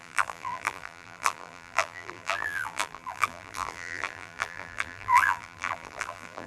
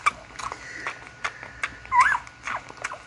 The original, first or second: second